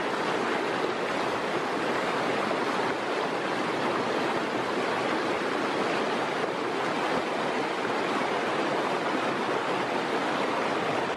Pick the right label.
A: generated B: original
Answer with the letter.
B